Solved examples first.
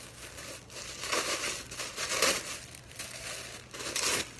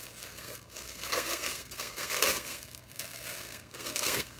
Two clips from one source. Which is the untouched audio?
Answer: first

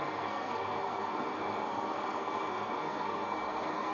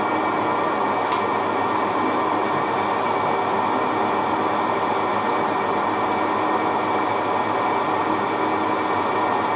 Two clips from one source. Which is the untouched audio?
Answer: second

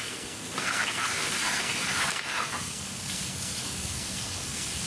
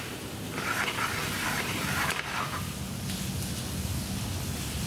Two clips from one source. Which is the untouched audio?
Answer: second